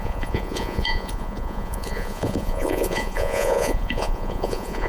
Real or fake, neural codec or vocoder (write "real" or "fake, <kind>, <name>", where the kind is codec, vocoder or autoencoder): fake, vocoder, Vocos